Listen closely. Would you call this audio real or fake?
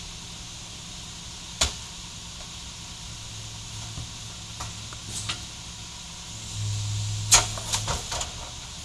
real